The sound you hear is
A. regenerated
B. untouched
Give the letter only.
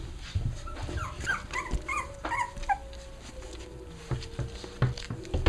B